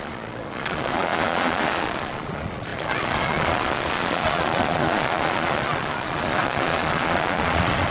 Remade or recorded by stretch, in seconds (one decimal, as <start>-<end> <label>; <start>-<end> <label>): 0.0-7.9 remade